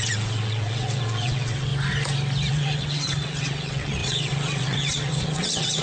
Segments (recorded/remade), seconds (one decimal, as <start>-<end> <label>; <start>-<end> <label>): 0.0-1.7 remade; 1.7-2.5 recorded; 2.5-5.8 remade